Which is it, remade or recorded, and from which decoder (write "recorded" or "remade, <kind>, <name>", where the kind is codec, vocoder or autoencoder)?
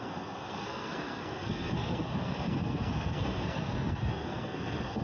remade, codec, SNAC